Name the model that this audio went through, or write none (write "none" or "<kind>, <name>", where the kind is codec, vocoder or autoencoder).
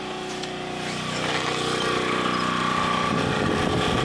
none